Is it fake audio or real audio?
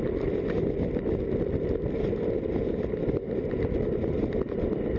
real